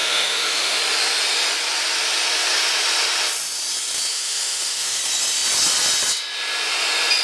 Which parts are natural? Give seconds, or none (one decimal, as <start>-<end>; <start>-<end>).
0.8-4.1; 5.0-7.2